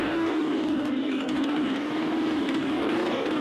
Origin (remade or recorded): remade